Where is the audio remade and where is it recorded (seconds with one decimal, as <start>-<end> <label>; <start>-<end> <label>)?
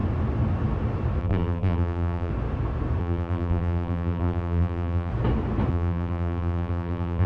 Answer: 0.0-1.2 recorded; 1.2-2.3 remade; 2.3-3.0 recorded; 3.0-5.1 remade; 5.1-5.7 recorded; 5.7-7.3 remade